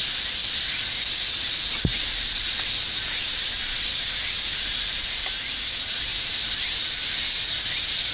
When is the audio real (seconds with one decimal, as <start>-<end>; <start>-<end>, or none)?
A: 0.0-3.2; 5.1-6.1; 6.8-8.1